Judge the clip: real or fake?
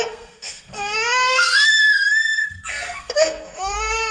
fake